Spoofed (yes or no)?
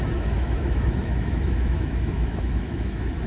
yes